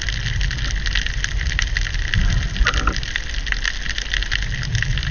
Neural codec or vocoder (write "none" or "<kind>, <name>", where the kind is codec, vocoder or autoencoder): none